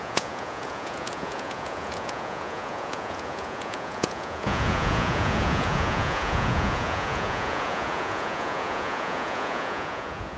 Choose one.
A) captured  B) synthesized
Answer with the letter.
B